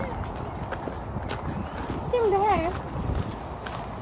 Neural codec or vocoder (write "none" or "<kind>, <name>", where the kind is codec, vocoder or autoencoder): none